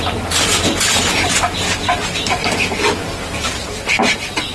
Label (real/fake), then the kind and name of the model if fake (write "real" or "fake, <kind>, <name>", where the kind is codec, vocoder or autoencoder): real